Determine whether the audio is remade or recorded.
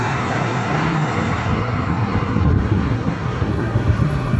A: remade